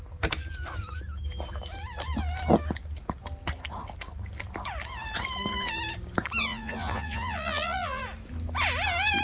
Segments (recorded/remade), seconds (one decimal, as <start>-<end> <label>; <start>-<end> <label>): 0.0-6.5 recorded; 6.5-8.0 remade; 8.0-9.2 recorded